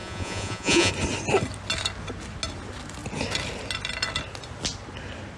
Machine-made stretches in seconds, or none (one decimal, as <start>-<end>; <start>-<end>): 0.0-0.9